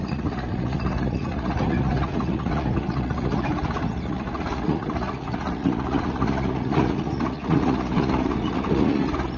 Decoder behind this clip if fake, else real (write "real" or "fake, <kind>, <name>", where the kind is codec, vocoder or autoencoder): fake, vocoder, Vocos